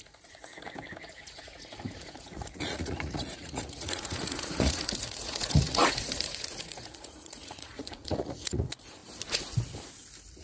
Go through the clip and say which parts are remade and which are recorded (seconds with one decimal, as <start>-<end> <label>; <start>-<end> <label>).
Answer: 0.0-0.5 remade; 0.5-1.2 recorded; 1.2-9.0 remade; 9.0-10.4 recorded